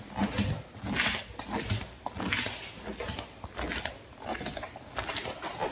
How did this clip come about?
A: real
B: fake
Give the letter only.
A